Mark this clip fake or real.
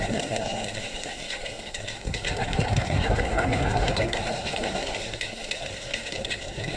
fake